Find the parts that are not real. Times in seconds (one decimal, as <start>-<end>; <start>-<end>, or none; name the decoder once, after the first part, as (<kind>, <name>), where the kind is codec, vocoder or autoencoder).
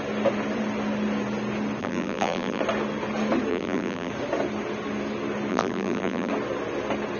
1.8-2.6 (vocoder, BigVGAN v2); 3.5-4.1; 5.5-6.3